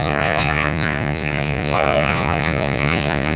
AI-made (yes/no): yes